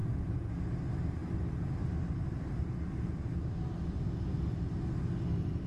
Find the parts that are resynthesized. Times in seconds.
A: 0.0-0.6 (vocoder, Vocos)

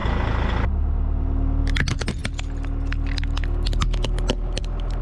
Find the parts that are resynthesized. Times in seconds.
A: none

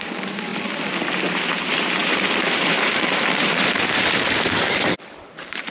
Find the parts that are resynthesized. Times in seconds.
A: 0.0-0.5 (vocoder, BigVGAN v2); 1.3-5.7

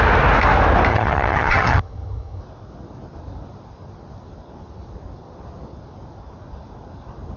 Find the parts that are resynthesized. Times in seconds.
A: 0.9-2.4 (vocoder, HiFi-GAN)

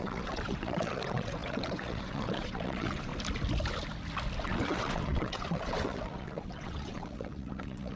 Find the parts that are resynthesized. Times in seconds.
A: 0.0-3.1 (vocoder, WaveNeXt); 4.4-8.0

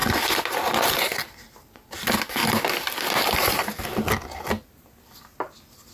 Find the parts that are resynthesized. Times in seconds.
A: 0.0-1.0 (vocoder, BigVGAN v2); 2.4-3.8

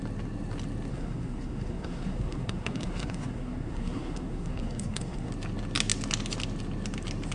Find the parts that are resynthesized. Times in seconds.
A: 0.9-5.3 (codec, SNAC)